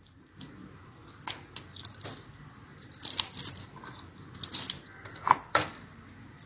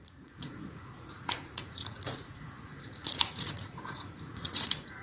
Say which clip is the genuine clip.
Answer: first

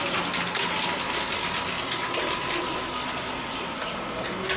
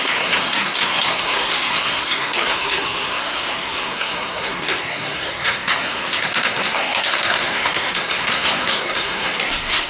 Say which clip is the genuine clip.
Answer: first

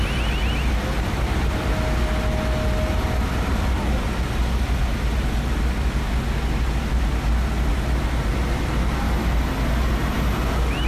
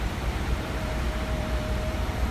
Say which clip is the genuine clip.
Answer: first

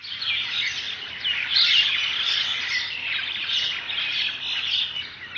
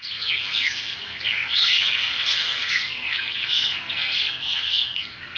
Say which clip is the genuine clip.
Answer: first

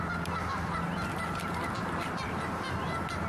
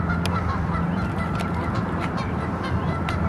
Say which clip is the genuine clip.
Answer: first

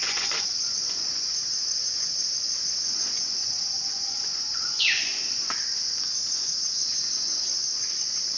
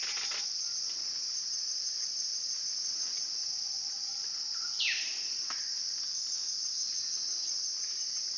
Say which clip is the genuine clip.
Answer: second